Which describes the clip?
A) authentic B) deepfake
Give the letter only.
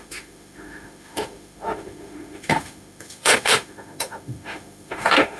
B